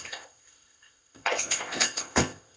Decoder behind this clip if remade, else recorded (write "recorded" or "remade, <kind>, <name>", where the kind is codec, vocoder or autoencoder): remade, codec, ZipCodec